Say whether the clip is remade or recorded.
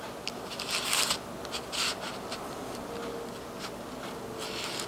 recorded